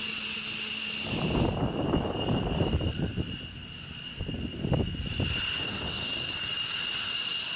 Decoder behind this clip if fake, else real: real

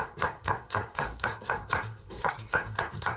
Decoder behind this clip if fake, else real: fake, codec, SNAC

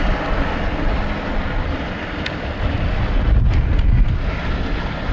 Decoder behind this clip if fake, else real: real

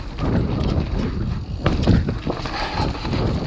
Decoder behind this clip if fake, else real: real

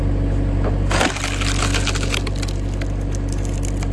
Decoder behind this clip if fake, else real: real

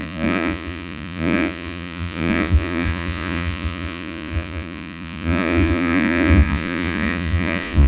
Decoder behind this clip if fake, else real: fake, vocoder, Vocos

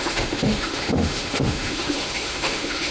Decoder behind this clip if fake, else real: fake, autoencoder, DAC-VAE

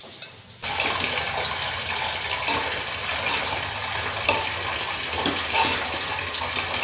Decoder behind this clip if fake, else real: real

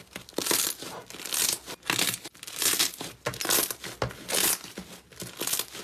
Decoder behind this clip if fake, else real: real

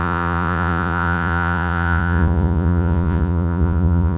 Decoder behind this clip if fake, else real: fake, vocoder, Vocos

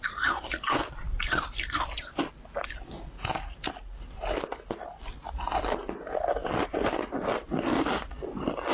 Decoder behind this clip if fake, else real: real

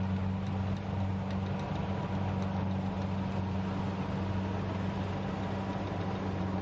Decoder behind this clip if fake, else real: real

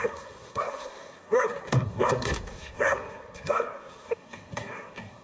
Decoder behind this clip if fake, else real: fake, codec, SNAC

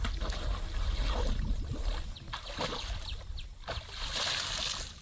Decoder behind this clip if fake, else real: real